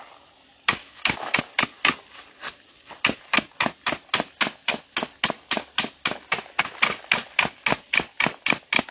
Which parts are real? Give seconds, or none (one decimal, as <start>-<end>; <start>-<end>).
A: 0.0-0.8; 1.4-8.9